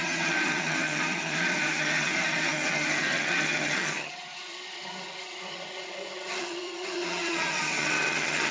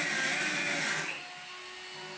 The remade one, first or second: first